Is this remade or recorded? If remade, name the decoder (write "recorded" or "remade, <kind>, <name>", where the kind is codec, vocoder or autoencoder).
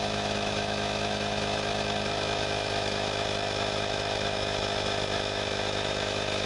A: remade, autoencoder, DAC-VAE